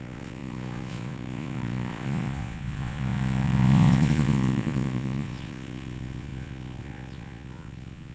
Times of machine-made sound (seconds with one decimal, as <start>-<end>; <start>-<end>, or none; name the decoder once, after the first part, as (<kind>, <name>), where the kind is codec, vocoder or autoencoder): 0.0-8.1 (vocoder, Vocos)